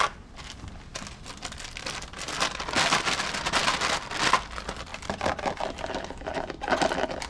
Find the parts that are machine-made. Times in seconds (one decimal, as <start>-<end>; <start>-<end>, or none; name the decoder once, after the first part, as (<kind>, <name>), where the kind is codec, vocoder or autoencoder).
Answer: none